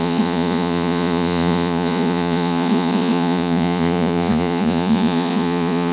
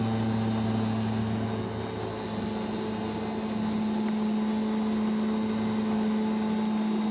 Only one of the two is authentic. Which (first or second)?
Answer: second